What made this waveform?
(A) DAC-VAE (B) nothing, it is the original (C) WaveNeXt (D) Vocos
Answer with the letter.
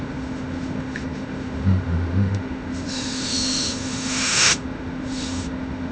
A